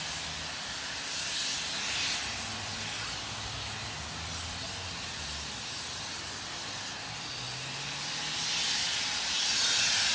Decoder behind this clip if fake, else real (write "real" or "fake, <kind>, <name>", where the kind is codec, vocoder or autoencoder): real